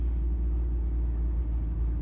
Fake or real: real